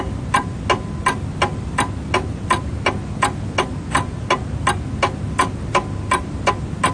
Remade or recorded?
recorded